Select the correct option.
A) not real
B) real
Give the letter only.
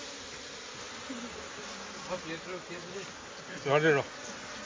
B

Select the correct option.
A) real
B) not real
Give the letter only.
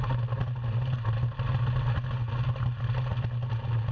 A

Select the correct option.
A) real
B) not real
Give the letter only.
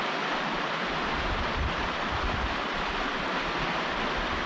A